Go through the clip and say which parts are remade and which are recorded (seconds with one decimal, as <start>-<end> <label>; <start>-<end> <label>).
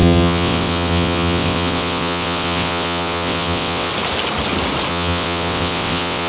0.0-3.9 remade; 3.9-4.9 recorded; 4.9-6.3 remade